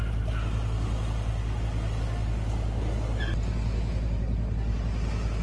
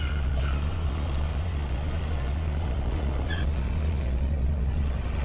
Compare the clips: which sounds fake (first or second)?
second